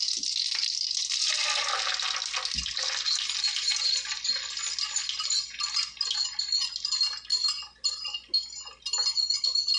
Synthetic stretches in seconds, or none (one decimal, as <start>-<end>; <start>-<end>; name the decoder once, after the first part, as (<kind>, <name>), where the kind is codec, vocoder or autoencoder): none